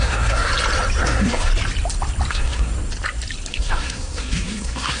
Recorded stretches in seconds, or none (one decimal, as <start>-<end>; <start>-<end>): 0.5-1.0; 1.5-2.3; 2.7-3.5